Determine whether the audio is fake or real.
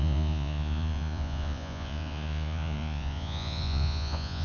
fake